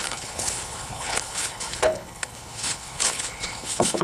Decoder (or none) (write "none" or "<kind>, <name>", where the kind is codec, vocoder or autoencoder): codec, HILCodec